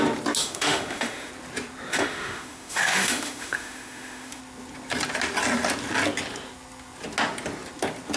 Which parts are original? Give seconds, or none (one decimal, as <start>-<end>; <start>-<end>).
0.0-0.4; 1.3-1.9; 4.4-8.2